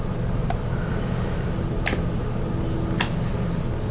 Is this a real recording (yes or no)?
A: yes